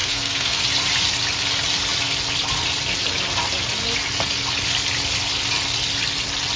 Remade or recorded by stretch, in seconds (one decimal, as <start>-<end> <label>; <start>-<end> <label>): 0.0-0.6 remade; 0.6-6.6 recorded